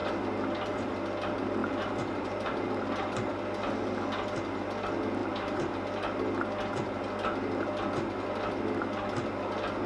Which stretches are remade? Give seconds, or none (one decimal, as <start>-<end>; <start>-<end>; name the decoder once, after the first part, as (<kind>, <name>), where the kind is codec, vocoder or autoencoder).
1.6-2.7 (vocoder, BigVGAN v2); 5.2-5.8